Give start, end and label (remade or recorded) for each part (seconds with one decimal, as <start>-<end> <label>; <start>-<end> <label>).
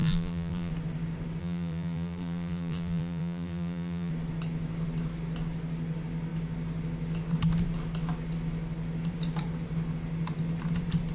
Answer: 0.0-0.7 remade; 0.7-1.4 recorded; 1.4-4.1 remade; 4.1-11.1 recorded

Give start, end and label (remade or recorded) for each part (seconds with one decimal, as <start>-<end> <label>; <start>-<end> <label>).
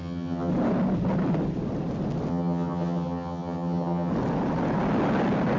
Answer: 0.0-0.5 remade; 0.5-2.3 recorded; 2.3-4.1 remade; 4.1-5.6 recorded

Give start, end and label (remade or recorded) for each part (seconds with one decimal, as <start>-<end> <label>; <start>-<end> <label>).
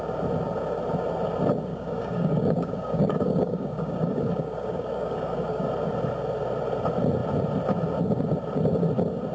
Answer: 0.0-1.7 recorded; 1.7-5.7 remade; 5.7-9.3 recorded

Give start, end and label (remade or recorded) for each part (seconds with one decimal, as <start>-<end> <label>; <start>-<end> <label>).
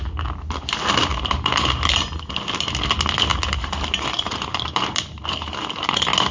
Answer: 0.0-1.1 recorded; 1.1-2.1 remade; 2.1-3.3 recorded; 3.3-5.3 remade; 5.3-6.3 recorded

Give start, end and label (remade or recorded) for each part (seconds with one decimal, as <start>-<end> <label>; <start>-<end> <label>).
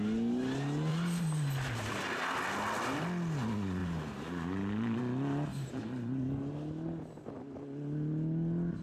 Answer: 0.0-0.9 recorded; 0.9-1.9 remade; 1.9-3.8 recorded; 3.8-5.0 remade; 5.0-5.5 recorded; 5.5-6.2 remade; 6.2-8.8 recorded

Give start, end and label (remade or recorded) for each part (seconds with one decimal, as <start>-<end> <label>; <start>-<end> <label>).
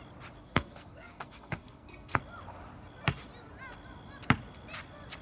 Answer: 0.0-0.4 recorded; 0.4-2.2 remade; 2.2-5.2 recorded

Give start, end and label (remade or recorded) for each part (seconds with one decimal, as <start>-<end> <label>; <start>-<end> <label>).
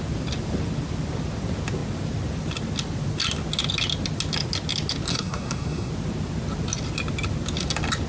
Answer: 0.0-5.1 recorded; 5.1-5.9 remade; 5.9-8.1 recorded